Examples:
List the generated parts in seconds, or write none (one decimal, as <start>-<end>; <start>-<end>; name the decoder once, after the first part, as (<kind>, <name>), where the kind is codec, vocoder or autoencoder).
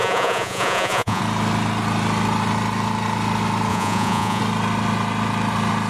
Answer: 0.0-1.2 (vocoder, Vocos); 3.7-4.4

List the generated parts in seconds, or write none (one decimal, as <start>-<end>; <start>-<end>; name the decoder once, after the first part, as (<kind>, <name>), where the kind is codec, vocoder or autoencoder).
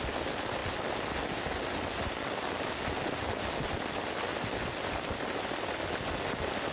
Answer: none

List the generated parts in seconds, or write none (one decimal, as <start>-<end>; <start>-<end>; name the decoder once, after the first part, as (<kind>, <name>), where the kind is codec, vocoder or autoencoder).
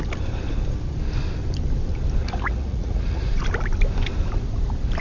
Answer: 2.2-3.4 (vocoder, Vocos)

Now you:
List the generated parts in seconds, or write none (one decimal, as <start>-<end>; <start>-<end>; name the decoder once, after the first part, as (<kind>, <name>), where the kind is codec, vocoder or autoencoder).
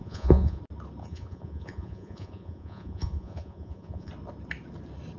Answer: 0.0-0.6 (vocoder, Vocos); 1.0-4.1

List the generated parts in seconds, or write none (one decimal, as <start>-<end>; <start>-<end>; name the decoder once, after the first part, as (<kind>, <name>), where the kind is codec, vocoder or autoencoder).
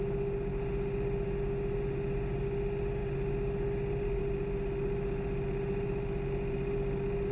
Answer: none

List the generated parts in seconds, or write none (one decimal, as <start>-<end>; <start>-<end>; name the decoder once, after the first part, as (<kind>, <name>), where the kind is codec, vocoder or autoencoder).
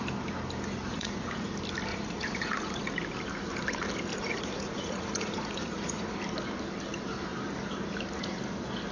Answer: 0.9-1.5 (vocoder, Vocos); 1.9-2.9; 4.1-6.1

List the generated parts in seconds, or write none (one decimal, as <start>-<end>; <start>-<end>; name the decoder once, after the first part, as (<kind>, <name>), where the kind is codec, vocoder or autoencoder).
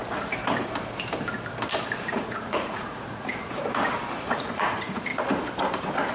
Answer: 2.1-3.8 (vocoder, Vocos); 4.3-5.1